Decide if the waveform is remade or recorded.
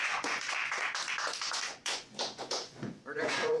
remade